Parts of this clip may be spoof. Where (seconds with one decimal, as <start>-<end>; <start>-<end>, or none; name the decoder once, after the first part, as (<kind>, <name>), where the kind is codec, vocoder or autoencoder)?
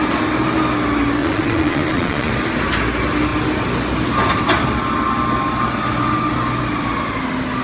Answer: 1.2-2.3 (vocoder, Vocos)